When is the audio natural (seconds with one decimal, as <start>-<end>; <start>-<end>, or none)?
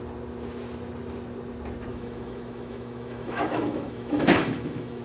0.0-1.9